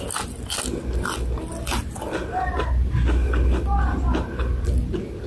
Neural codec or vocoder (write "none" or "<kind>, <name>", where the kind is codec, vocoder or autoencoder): none